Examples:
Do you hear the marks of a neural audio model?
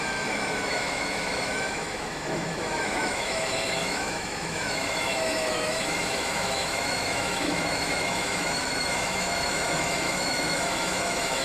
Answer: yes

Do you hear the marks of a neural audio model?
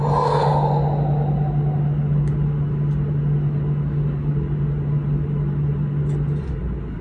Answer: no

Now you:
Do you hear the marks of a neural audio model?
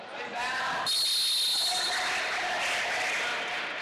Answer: no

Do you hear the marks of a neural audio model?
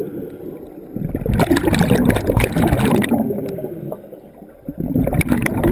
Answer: no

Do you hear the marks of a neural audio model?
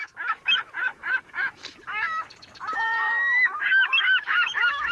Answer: yes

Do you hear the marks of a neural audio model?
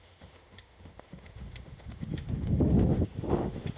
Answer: yes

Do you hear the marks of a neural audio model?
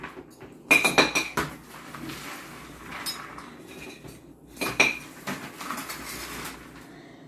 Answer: no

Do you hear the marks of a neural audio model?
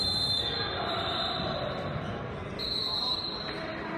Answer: no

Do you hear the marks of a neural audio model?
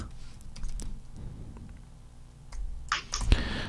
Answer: no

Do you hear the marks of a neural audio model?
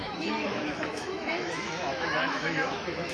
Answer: yes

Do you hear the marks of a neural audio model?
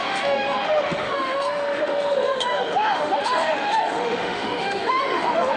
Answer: yes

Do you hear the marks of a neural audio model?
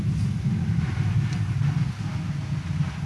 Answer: no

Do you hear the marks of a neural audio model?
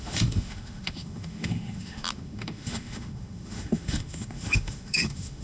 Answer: yes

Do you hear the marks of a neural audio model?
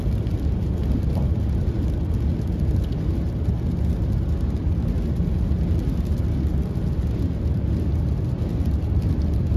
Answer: no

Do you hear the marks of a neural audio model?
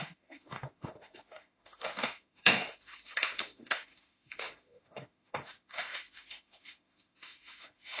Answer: yes